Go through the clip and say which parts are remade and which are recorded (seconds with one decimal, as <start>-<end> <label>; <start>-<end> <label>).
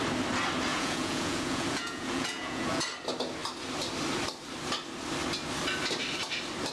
0.0-0.7 recorded; 0.7-2.8 remade; 2.8-6.7 recorded